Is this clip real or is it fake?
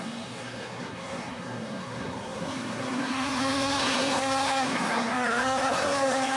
fake